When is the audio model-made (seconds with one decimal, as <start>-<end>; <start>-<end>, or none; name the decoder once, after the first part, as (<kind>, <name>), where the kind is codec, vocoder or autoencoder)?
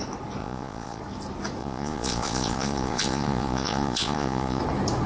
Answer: 0.4-1.0 (vocoder, Vocos); 1.6-4.6